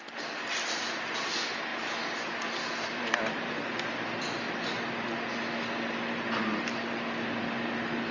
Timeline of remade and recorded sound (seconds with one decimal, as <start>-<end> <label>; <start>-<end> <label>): 0.0-8.1 recorded